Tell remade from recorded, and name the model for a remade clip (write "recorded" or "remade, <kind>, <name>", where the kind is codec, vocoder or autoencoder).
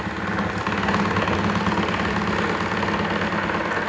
recorded